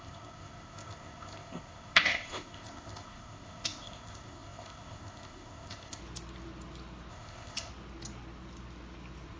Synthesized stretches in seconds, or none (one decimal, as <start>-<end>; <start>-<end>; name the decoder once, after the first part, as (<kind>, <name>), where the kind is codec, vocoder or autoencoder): 0.0-6.0 (codec, ZipCodec); 7.1-7.7